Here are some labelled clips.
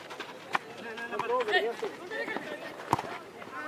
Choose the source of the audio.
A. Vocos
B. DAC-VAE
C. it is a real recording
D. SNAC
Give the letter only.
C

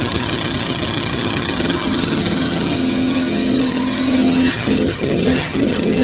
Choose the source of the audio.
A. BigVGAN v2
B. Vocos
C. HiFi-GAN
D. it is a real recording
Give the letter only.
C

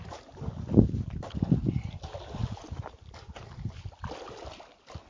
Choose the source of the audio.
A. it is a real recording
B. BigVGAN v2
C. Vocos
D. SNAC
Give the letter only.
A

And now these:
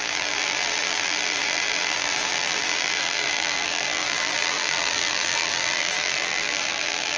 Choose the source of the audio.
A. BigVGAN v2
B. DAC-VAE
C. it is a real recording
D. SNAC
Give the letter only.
A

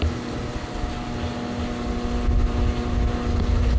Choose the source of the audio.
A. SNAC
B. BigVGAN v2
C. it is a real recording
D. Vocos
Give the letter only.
C